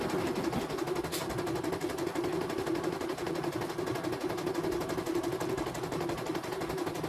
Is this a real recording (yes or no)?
yes